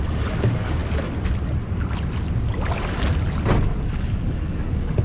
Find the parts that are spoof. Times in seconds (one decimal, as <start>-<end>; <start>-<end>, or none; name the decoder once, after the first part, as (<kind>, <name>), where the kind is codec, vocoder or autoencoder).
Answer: 0.0-0.8 (codec, DAC); 3.8-5.0